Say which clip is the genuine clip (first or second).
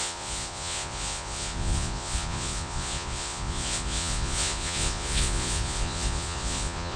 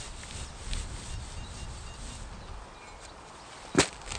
second